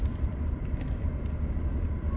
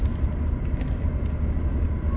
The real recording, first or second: second